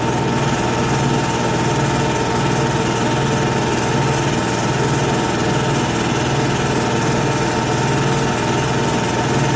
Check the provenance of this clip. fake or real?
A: real